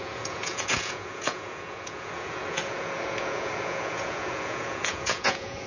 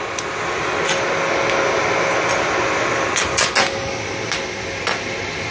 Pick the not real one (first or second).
first